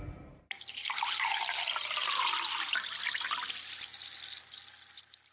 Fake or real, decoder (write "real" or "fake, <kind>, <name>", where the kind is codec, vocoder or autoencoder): real